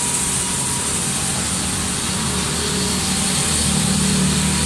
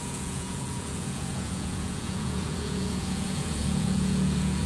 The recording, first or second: first